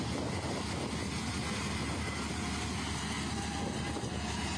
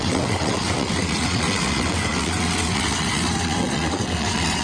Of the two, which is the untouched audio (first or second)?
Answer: first